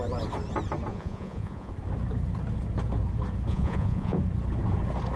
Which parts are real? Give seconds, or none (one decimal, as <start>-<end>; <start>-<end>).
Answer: 0.0-0.9; 1.7-3.5; 4.2-5.2